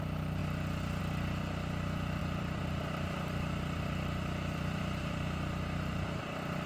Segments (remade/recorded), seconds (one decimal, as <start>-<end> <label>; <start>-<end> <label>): 0.0-2.2 recorded; 2.2-6.2 remade; 6.2-6.7 recorded